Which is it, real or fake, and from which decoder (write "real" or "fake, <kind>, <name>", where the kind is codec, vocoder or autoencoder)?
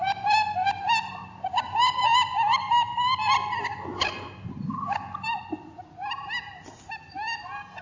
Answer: real